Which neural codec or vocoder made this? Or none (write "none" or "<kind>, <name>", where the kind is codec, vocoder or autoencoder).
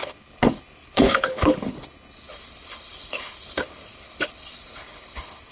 codec, HILCodec